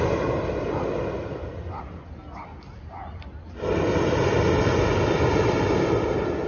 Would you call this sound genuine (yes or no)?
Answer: yes